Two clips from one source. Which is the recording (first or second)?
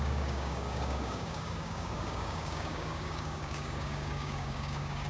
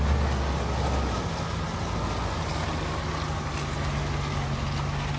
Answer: second